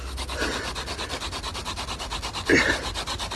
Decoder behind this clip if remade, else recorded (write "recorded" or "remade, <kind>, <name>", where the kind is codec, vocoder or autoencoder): recorded